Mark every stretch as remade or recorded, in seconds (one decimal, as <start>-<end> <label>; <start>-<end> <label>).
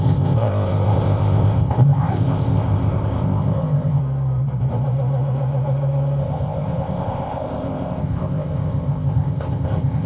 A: 0.0-4.0 remade; 4.0-6.2 recorded; 6.2-10.1 remade